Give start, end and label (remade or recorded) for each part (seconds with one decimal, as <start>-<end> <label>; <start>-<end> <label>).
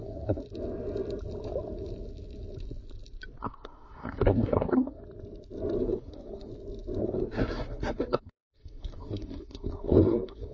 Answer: 0.0-0.4 remade; 0.4-3.4 recorded; 3.4-5.0 remade; 5.0-5.8 recorded; 5.8-6.5 remade; 6.5-7.0 recorded; 7.0-10.5 remade